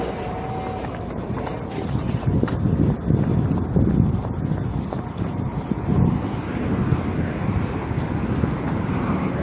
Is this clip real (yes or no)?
yes